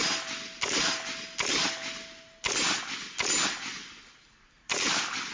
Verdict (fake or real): real